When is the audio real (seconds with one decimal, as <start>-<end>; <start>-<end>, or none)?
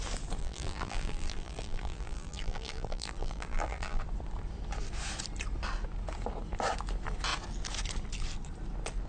0.0-0.4; 4.0-9.1